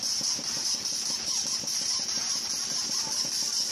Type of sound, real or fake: real